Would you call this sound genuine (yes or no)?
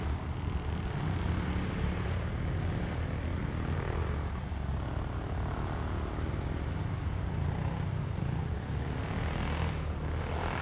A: yes